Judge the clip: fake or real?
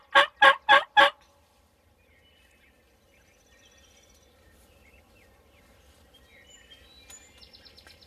real